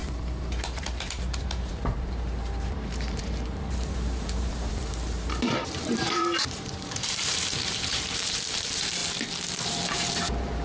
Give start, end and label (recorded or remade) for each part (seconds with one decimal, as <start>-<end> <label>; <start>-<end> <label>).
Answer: 0.0-9.0 remade; 9.0-9.6 recorded; 9.6-10.6 remade